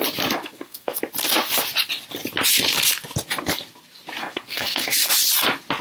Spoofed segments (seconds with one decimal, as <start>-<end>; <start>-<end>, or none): 0.4-1.0; 4.2-5.1